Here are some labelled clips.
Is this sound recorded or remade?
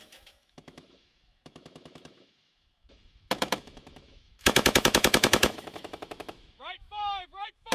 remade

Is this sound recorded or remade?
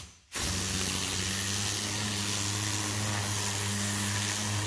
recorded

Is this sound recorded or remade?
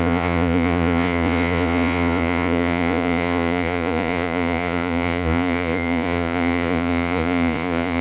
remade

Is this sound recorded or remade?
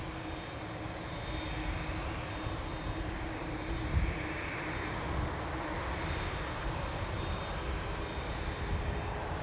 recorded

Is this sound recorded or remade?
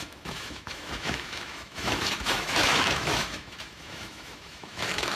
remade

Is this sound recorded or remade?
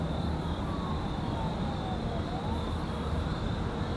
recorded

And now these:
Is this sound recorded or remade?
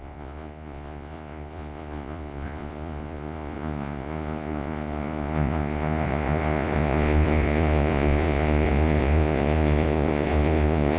remade